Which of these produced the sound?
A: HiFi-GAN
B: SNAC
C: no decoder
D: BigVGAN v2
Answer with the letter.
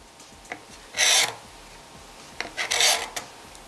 C